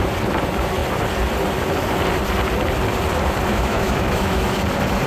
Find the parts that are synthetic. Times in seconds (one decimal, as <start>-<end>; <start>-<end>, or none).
3.5-4.6